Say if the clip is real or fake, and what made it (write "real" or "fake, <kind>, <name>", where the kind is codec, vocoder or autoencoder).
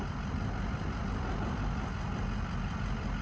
real